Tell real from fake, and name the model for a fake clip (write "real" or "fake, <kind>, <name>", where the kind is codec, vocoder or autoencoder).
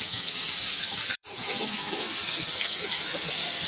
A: fake, codec, SNAC